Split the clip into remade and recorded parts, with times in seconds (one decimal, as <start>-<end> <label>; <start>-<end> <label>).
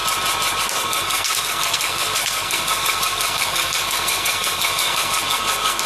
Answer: 0.0-0.6 recorded; 0.6-5.9 remade